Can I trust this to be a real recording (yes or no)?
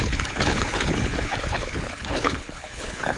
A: no